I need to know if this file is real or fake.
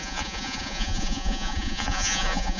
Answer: fake